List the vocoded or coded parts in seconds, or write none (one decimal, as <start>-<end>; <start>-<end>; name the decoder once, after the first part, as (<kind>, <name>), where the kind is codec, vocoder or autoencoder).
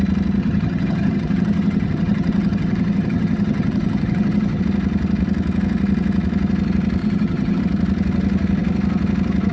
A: 0.4-4.6 (vocoder, HiFi-GAN); 7.0-7.6